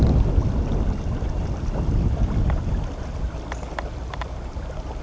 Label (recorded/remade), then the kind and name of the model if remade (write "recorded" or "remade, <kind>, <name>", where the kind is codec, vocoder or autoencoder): recorded